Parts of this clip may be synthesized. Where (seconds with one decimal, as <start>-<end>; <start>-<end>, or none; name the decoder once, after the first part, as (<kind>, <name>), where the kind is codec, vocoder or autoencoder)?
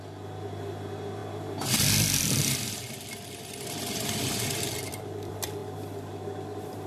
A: 0.0-6.9 (vocoder, BigVGAN v2)